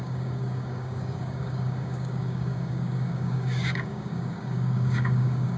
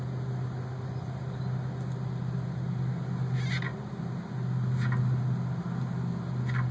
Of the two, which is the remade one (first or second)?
first